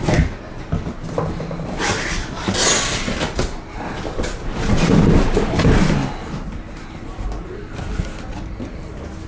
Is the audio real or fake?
real